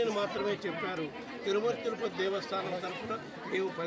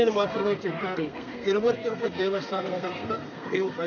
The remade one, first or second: second